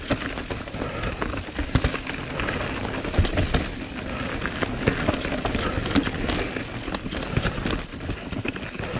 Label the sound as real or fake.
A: real